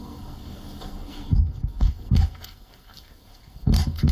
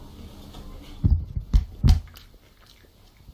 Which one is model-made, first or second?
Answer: first